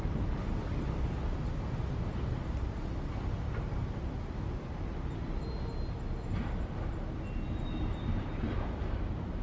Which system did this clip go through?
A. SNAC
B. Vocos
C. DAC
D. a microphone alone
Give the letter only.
D